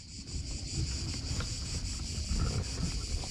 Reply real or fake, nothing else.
real